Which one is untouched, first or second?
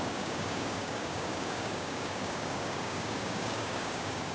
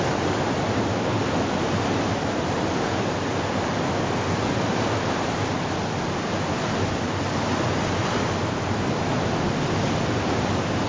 second